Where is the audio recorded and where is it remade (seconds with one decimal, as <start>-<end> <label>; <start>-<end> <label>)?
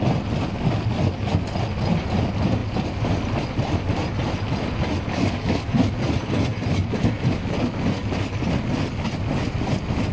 0.0-5.2 recorded; 5.2-5.8 remade; 5.8-10.1 recorded